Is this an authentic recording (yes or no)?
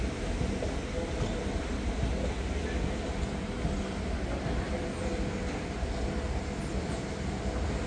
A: yes